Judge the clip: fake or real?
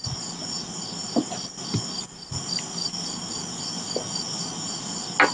real